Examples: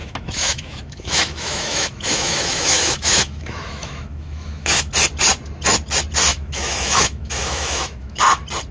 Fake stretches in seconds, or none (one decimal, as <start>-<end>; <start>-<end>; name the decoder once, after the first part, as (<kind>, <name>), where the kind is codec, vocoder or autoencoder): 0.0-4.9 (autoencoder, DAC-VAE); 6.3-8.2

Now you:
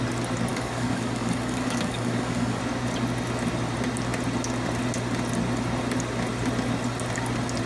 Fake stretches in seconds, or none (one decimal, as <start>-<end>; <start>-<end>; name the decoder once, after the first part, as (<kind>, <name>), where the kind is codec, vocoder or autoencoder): 0.5-2.6 (codec, DAC)

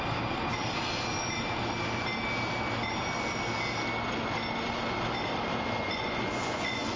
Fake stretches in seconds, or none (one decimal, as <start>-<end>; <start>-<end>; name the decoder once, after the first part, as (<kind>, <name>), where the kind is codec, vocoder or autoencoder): 5.8-7.0 (vocoder, Vocos)

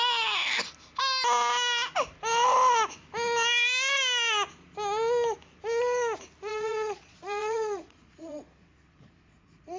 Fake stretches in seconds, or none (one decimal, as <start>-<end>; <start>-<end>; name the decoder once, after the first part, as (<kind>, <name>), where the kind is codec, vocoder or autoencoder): 6.5-9.8 (vocoder, Vocos)

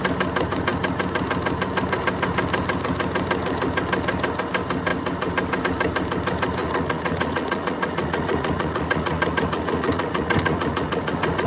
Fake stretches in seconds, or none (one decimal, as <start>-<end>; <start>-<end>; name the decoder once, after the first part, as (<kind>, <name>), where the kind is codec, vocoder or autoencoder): 6.6-11.5 (vocoder, Vocos)

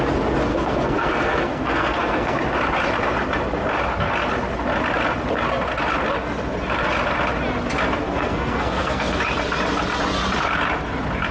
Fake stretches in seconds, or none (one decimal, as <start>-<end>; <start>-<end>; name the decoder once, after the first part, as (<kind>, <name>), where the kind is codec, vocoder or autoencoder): 0.5-2.4 (codec, SNAC); 8.0-9.2

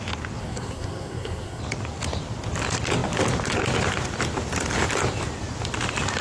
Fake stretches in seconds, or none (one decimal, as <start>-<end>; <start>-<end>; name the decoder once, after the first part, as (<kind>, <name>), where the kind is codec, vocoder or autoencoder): 0.4-1.6 (codec, SNAC)